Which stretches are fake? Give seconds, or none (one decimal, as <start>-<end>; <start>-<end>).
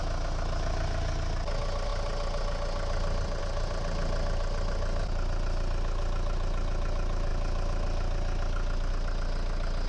none